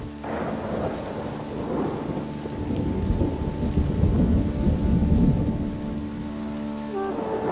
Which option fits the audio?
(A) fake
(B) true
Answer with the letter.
B